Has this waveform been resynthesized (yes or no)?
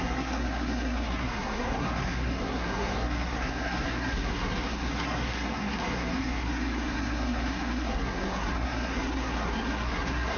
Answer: yes